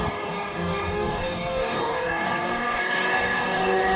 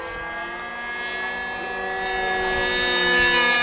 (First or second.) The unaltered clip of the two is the second